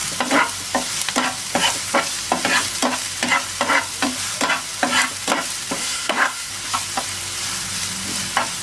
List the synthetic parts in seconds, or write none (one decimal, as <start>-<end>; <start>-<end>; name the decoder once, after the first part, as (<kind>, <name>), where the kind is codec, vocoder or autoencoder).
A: 5.8-6.5 (codec, SNAC)